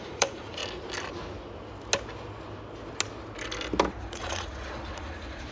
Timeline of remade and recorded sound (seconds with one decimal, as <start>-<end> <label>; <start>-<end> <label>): 0.0-0.6 remade; 0.6-3.9 recorded; 3.9-5.5 remade